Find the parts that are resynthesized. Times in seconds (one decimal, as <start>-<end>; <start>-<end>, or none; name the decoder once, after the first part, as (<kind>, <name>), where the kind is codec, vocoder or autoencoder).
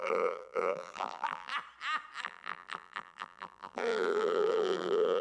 0.0-1.5 (vocoder, BigVGAN v2); 2.2-5.2